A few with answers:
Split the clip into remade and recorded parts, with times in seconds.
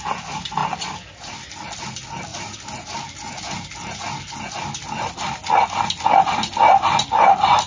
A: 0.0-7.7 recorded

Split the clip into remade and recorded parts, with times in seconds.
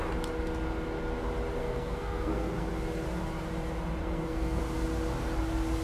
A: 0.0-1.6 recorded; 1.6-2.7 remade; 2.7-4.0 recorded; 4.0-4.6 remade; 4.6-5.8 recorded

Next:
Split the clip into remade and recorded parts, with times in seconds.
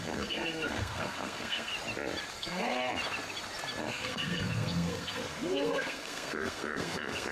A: 0.0-1.7 remade; 1.7-2.3 recorded; 2.3-2.8 remade; 2.8-3.8 recorded; 3.8-7.3 remade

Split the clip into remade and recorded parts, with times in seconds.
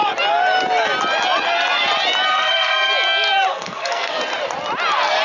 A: 0.0-2.3 recorded; 2.3-2.9 remade; 2.9-3.5 recorded; 3.5-4.2 remade; 4.2-5.2 recorded